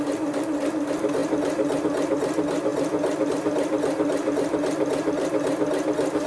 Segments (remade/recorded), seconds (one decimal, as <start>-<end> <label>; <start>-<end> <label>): 0.0-6.3 recorded